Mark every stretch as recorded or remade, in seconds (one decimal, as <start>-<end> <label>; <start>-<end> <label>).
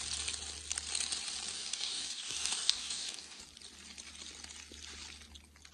0.0-1.5 recorded; 1.5-3.4 remade; 3.4-5.7 recorded